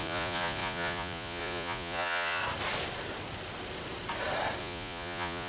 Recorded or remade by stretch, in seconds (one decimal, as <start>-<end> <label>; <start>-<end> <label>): 0.0-2.4 remade; 2.4-4.6 recorded; 4.6-5.5 remade